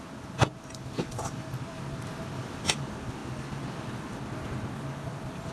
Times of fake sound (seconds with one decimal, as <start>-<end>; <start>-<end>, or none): none